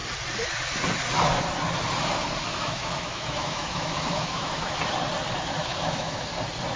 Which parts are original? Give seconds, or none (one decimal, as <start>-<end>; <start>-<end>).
0.0-2.5; 4.8-5.6; 6.2-6.8